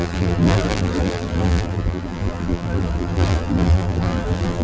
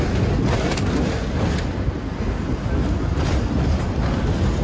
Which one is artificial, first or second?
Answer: first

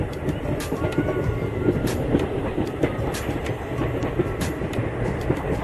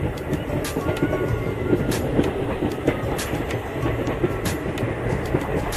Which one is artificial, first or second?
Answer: first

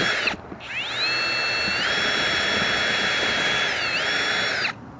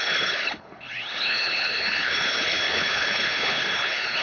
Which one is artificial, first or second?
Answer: second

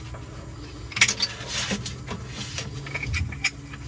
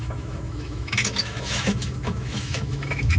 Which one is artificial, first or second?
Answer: second